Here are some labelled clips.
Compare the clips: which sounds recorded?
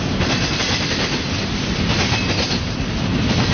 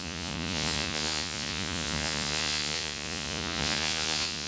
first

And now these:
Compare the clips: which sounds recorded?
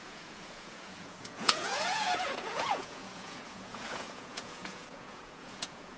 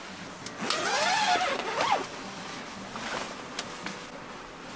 second